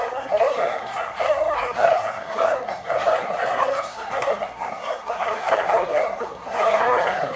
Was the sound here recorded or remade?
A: remade